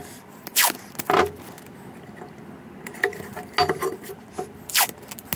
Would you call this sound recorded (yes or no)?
yes